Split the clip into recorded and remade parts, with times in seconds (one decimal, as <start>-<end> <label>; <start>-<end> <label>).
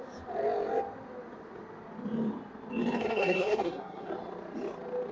0.0-3.0 recorded; 3.0-4.1 remade; 4.1-5.1 recorded